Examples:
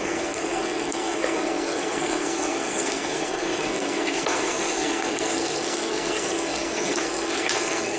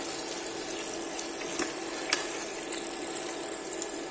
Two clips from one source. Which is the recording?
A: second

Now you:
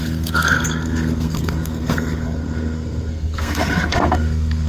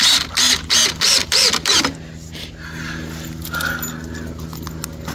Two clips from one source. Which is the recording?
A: second